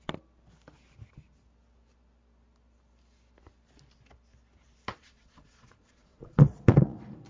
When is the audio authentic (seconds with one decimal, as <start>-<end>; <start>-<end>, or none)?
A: 0.0-4.9